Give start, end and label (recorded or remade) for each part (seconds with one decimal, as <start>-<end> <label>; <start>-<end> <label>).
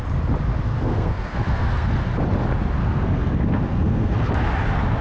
0.0-0.7 recorded; 0.7-1.9 remade; 1.9-2.8 recorded; 2.8-4.3 remade; 4.3-5.0 recorded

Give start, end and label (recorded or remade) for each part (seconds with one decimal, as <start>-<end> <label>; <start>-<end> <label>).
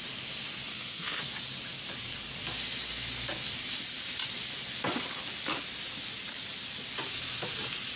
0.0-0.7 recorded; 0.7-1.2 remade; 1.2-8.0 recorded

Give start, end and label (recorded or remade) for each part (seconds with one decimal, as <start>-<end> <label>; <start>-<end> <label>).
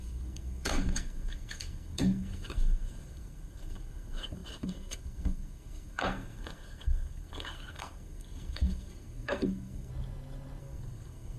0.0-9.9 remade; 9.9-10.6 recorded; 10.6-11.4 remade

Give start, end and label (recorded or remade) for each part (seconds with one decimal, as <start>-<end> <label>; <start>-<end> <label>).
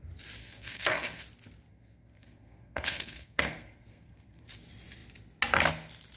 0.0-0.4 recorded; 0.4-1.2 remade; 1.2-1.7 recorded; 1.7-4.4 remade; 4.4-6.2 recorded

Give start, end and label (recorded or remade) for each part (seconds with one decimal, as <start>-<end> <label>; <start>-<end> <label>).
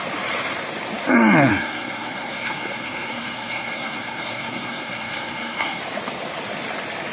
0.0-1.5 recorded; 1.5-5.8 remade; 5.8-7.1 recorded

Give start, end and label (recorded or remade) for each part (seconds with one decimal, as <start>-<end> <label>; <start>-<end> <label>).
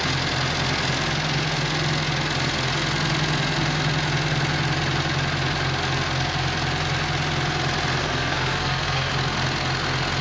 0.0-8.0 recorded; 8.0-9.1 remade; 9.1-10.2 recorded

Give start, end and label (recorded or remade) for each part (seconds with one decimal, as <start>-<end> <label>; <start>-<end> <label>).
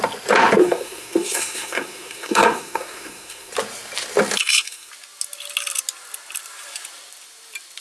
0.0-0.6 recorded; 0.6-3.5 remade; 3.5-4.4 recorded; 4.4-4.9 remade; 4.9-7.8 recorded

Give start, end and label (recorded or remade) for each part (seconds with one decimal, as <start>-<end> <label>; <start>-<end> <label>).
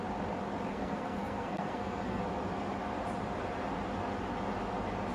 0.0-0.7 recorded; 0.7-2.2 remade; 2.2-5.1 recorded